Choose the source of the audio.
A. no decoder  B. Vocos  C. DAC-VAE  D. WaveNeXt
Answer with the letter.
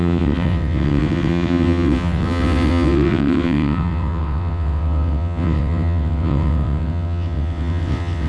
D